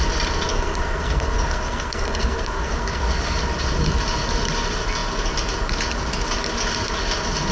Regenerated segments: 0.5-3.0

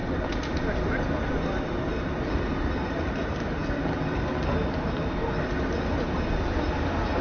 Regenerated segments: none

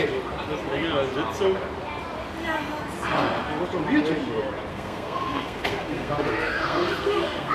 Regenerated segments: 4.7-7.5

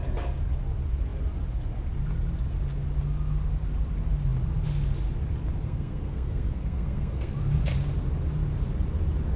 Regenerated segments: 5.6-7.3

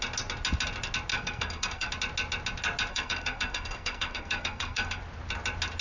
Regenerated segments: 1.1-1.9; 2.9-5.0